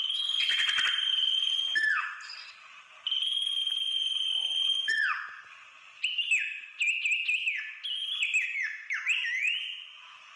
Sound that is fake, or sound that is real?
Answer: real